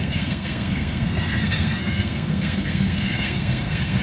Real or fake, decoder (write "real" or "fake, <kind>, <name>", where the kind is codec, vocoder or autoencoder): fake, codec, SNAC